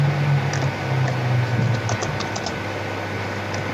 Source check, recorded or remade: recorded